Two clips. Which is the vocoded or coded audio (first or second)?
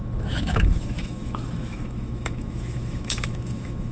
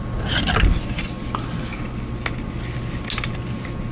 first